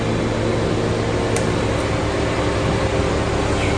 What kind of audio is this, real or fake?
real